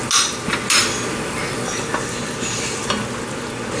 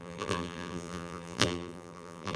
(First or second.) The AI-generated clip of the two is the second